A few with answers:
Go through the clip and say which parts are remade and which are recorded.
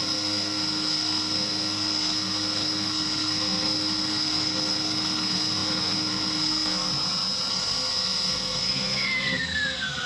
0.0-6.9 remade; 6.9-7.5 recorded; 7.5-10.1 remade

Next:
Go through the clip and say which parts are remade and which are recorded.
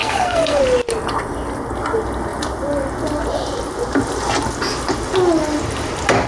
0.0-0.6 remade; 0.6-6.3 recorded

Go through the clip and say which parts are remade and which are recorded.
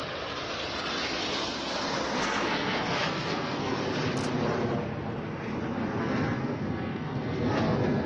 0.0-2.2 recorded; 2.2-3.8 remade; 3.8-6.0 recorded; 6.0-8.1 remade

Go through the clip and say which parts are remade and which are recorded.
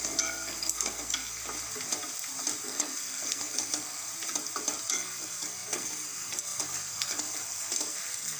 0.0-1.4 remade; 1.4-2.6 recorded; 2.6-4.1 remade; 4.1-4.9 recorded; 4.9-8.4 remade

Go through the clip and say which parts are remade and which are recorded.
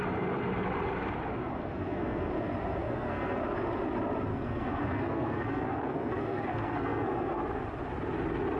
0.0-1.6 recorded; 1.6-2.3 remade; 2.3-2.8 recorded; 2.8-3.4 remade; 3.4-4.3 recorded; 4.3-7.4 remade; 7.4-8.6 recorded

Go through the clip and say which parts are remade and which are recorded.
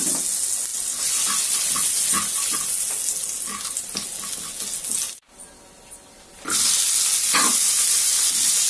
0.0-8.7 recorded